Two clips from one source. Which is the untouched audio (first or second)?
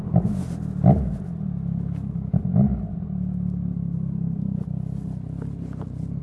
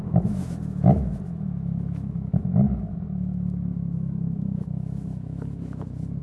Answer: first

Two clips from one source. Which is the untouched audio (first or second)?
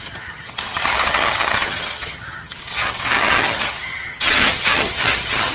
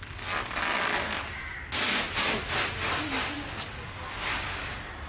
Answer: second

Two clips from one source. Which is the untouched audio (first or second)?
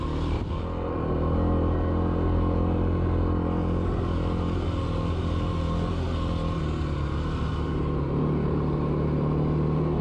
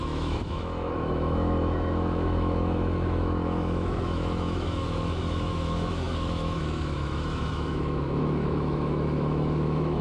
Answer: first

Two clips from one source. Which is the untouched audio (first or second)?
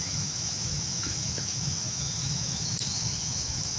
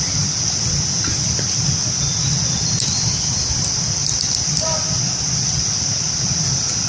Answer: second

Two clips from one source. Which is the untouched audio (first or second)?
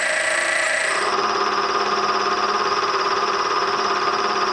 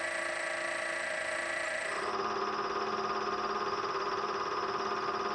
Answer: second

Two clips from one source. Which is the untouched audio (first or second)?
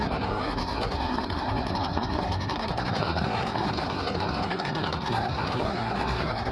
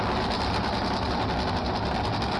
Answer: second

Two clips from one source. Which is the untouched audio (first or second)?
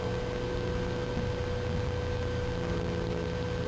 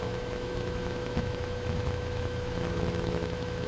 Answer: first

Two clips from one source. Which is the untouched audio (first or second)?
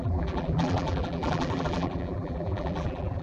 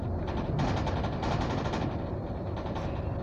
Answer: second